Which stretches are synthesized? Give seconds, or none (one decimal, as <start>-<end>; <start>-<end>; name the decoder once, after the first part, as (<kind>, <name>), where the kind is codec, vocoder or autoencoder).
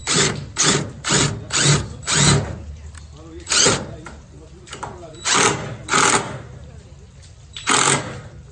none